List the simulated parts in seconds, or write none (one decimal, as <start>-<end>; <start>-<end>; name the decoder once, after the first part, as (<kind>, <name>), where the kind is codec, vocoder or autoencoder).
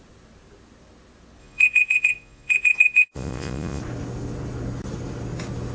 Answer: 1.4-3.8 (vocoder, Vocos)